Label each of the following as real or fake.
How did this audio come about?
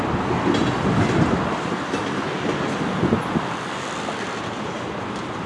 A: real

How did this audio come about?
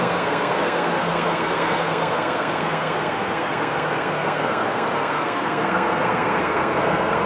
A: fake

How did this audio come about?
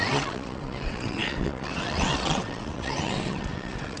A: fake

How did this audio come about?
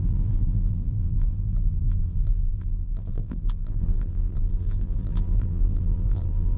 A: fake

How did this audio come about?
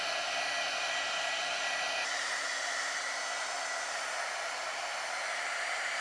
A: real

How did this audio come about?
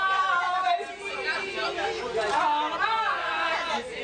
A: real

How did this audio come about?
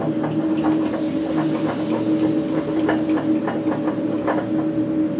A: real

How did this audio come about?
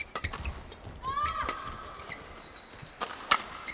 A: real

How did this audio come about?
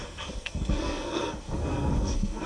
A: fake